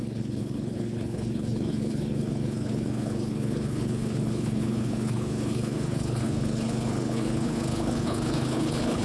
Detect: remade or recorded remade